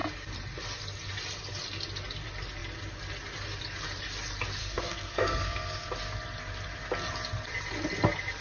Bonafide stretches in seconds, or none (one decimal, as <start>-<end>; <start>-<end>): 0.0-4.6; 5.9-8.4